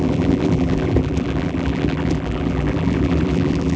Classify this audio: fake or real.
fake